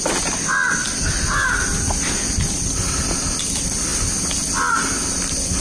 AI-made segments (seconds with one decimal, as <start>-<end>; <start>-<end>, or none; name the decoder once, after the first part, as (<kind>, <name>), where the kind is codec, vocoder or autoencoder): none